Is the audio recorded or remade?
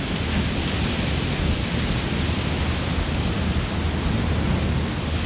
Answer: recorded